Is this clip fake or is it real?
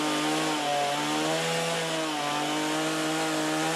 real